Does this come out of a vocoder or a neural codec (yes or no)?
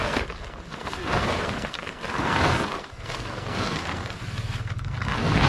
yes